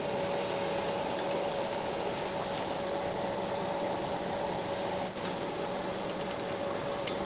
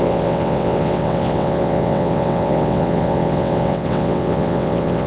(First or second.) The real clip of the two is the first